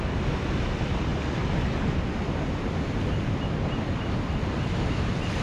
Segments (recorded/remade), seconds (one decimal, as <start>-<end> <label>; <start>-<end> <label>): 0.0-5.4 recorded